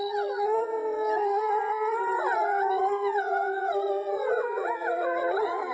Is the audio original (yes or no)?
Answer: no